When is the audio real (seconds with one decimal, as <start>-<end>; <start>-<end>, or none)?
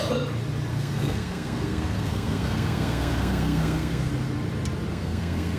0.0-0.7; 4.1-4.9